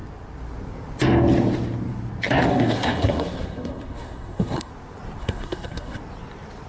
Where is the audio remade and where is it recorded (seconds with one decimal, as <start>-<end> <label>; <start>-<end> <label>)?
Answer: 0.0-2.5 recorded; 2.5-4.7 remade; 4.7-5.2 recorded; 5.2-6.0 remade; 6.0-6.7 recorded